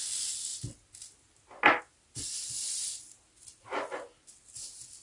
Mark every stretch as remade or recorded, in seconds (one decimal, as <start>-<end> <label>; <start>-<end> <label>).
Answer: 0.0-5.0 recorded